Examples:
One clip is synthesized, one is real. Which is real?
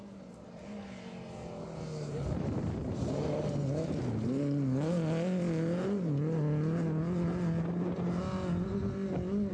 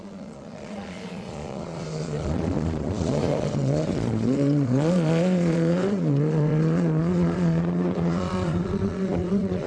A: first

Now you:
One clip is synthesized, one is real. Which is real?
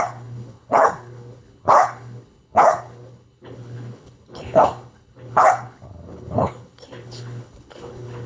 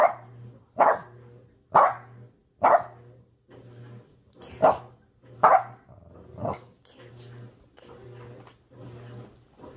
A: second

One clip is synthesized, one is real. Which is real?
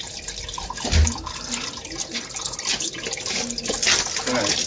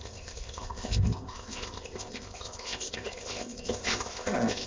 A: first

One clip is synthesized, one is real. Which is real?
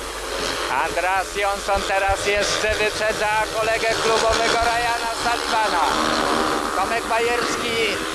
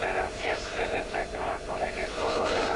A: first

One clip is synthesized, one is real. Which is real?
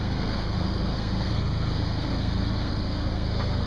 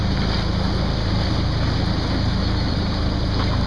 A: second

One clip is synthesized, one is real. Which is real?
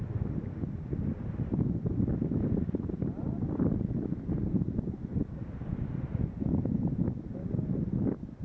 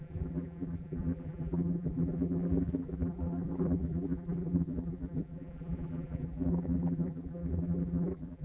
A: first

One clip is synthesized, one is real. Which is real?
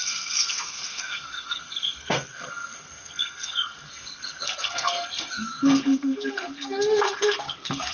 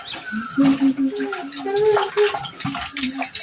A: second